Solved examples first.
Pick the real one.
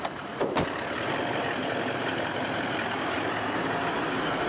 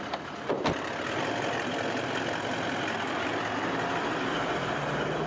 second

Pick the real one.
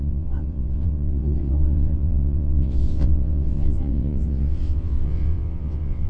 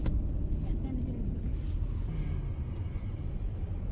second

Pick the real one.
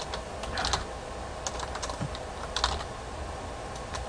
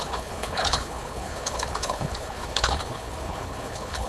first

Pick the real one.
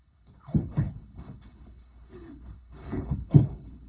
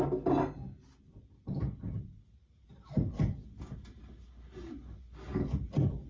second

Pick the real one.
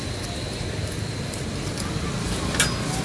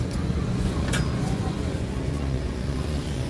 first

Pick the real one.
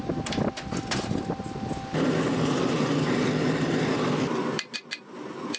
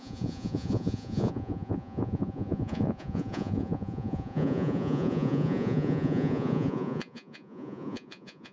first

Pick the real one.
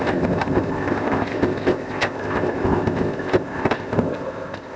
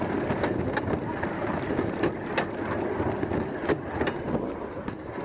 second